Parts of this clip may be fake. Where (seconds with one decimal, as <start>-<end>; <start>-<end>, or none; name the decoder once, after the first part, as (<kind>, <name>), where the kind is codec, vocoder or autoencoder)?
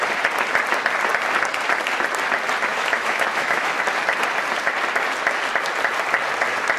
2.7-3.8 (autoencoder, DAC-VAE)